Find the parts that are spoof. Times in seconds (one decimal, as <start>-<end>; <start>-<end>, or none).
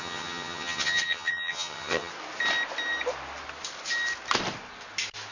0.0-2.1